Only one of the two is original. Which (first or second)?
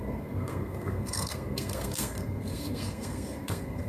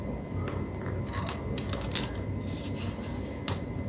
second